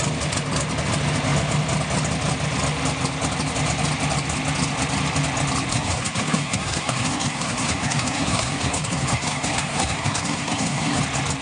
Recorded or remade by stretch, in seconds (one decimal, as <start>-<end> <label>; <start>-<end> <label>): 0.0-5.7 recorded; 5.7-11.0 remade; 11.0-11.4 recorded

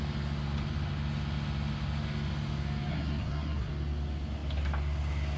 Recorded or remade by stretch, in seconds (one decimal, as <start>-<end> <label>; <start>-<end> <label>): 0.0-2.9 recorded; 2.9-3.7 remade; 3.7-5.4 recorded

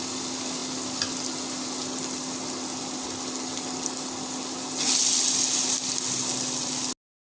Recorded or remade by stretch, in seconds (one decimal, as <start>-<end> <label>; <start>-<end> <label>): 0.0-7.3 recorded

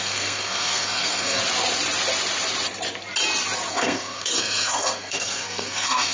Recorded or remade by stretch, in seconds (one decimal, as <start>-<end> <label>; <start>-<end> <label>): 0.0-1.4 remade; 1.4-3.7 recorded; 3.7-6.1 remade

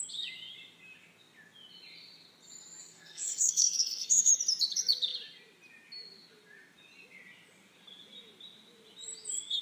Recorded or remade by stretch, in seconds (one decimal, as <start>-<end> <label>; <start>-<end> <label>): 0.0-2.8 recorded; 2.8-4.3 remade; 4.3-9.6 recorded

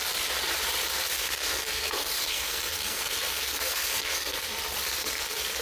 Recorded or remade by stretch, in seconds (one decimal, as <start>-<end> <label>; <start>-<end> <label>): 0.0-1.1 recorded; 1.1-4.5 remade; 4.5-5.0 recorded; 5.0-5.6 remade